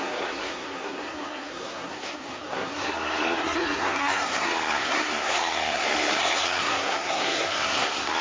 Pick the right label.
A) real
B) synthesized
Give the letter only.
B